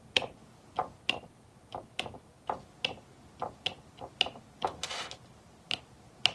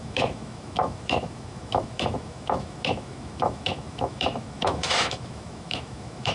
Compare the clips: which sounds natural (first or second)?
first